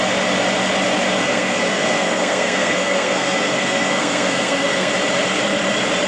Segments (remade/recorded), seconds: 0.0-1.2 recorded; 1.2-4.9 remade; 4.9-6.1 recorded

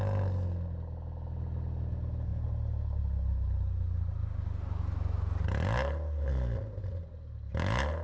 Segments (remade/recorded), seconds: 0.0-8.0 recorded